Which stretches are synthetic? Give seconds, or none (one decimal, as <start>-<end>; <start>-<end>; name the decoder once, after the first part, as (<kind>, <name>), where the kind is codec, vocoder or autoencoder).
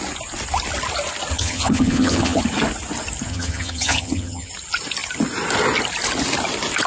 1.3-2.4 (vocoder, HiFi-GAN); 3.3-4.5